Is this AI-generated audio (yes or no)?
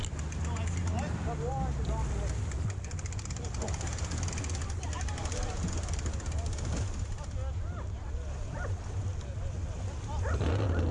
no